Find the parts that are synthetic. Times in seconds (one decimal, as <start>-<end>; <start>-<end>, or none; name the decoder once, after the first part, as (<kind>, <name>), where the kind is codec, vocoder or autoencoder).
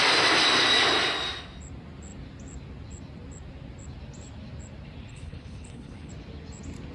5.1-6.1 (codec, HILCodec)